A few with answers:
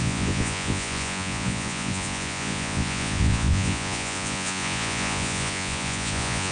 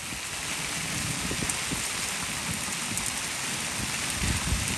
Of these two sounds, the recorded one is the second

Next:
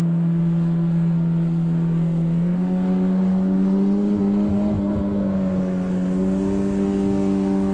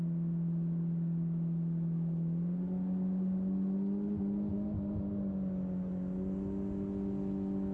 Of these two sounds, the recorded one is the second